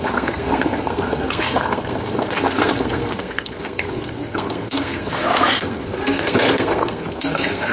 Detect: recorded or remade remade